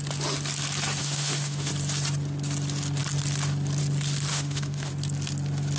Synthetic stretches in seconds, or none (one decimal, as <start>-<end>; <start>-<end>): 1.0-1.7; 4.3-4.9